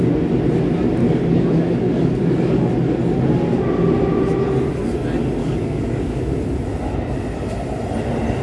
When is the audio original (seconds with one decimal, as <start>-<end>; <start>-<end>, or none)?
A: 0.0-1.0; 2.7-5.4; 6.2-8.4